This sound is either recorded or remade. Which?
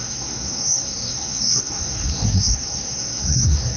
remade